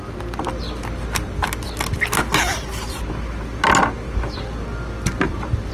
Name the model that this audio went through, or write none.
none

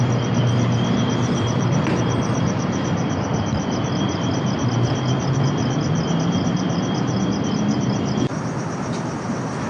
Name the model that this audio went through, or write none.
vocoder, BigVGAN v2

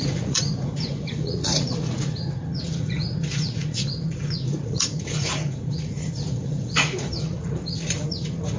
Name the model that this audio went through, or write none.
vocoder, Vocos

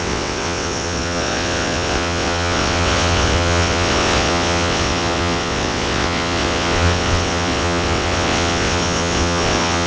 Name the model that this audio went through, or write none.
vocoder, WaveNeXt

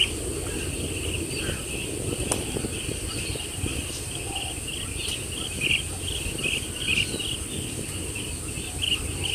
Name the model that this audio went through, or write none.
none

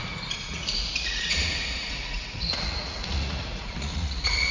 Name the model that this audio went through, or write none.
vocoder, Vocos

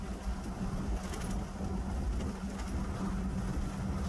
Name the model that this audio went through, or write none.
none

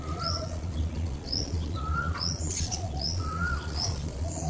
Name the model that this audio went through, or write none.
vocoder, Vocos